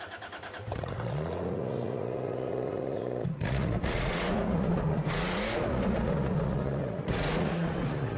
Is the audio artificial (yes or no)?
yes